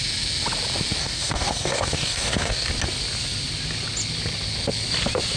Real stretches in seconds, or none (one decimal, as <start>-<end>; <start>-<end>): 0.0-1.0; 2.7-5.4